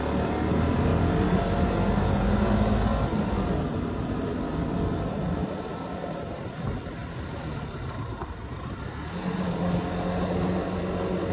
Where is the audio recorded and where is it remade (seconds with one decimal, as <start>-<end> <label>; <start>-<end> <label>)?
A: 0.0-11.3 recorded